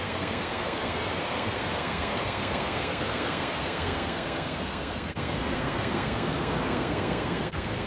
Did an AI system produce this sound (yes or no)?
yes